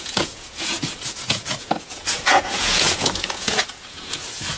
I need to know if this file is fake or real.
fake